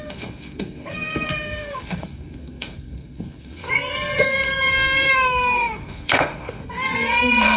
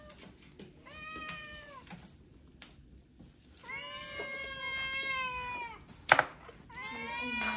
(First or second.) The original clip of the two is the second